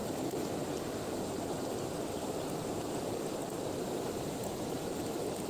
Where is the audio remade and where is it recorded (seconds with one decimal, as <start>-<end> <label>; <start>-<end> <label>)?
0.0-0.5 remade; 0.5-3.4 recorded; 3.4-5.0 remade; 5.0-5.5 recorded